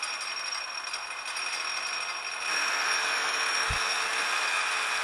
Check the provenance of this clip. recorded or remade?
recorded